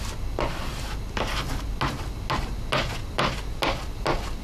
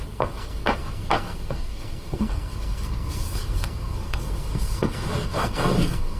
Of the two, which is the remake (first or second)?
second